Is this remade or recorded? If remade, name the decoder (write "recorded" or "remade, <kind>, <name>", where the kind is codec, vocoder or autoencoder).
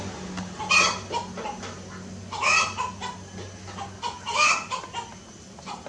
recorded